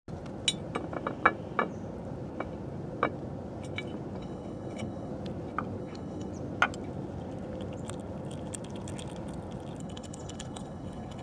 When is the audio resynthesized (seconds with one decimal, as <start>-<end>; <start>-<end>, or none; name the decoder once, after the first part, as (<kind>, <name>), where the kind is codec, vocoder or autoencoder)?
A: 4.2-5.1 (codec, HILCodec); 5.8-6.3; 9.8-11.2